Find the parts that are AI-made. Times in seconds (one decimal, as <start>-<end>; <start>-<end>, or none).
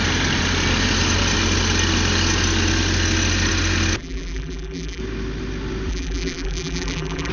4.0-5.0; 5.9-7.3